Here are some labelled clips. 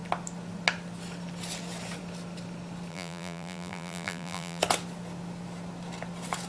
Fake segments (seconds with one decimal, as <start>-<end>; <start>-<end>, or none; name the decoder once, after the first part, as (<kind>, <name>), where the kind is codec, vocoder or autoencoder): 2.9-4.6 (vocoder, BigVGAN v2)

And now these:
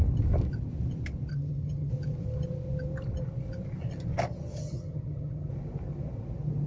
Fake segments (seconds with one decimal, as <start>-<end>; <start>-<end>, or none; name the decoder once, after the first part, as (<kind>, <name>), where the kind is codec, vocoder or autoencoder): 1.3-1.9 (vocoder, HiFi-GAN); 4.6-5.5

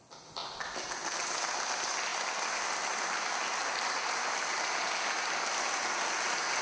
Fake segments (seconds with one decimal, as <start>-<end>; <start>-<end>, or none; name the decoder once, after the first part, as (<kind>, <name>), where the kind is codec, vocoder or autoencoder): none

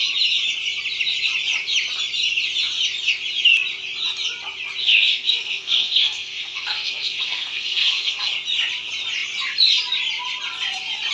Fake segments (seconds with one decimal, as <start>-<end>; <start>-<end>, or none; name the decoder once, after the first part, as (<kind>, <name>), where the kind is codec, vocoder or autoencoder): 4.8-8.3 (codec, SNAC)

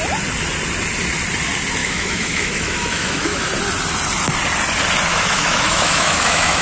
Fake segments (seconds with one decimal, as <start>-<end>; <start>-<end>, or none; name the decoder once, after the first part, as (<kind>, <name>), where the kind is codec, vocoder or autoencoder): 1.8-3.5 (autoencoder, DAC-VAE); 5.1-6.6

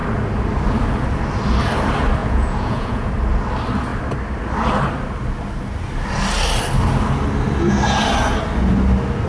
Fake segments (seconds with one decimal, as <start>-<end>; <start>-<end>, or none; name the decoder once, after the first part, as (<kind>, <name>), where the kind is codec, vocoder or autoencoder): 2.2-3.1 (vocoder, Vocos)

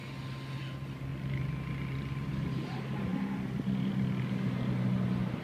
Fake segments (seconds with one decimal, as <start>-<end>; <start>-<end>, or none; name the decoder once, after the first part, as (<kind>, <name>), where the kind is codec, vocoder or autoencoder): none

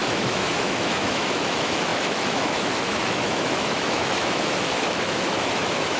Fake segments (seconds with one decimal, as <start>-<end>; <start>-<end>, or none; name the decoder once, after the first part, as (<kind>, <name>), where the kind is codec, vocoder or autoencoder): 0.0-6.0 (autoencoder, DAC-VAE)